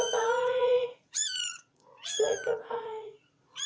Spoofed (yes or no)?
yes